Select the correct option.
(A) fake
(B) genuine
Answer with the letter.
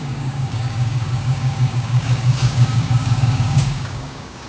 A